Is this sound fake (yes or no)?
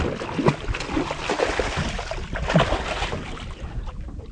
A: no